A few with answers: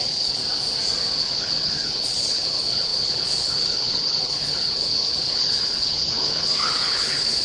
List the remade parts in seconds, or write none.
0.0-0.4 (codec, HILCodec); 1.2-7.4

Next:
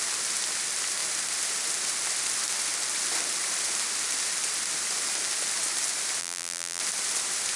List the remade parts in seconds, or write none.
6.2-6.8 (vocoder, BigVGAN v2)

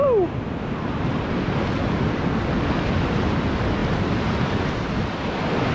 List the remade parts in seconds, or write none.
none

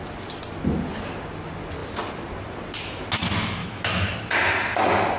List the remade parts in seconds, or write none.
3.6-4.1 (autoencoder, DAC-VAE)